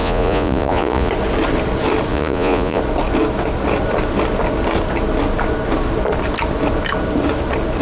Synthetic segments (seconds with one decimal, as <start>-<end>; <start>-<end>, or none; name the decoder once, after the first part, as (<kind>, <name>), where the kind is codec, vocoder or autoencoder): 0.0-1.1 (vocoder, Vocos); 2.1-2.8